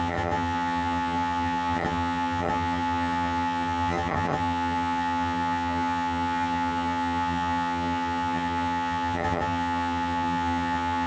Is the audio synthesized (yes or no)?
yes